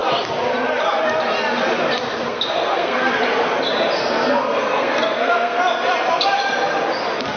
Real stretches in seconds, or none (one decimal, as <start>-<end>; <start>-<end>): 0.0-2.2; 3.1-4.0; 5.6-7.4